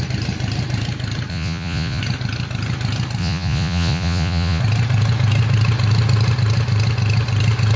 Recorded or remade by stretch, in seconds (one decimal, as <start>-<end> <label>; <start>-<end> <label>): 0.0-1.3 recorded; 1.3-2.0 remade; 2.0-3.2 recorded; 3.2-4.6 remade; 4.6-7.8 recorded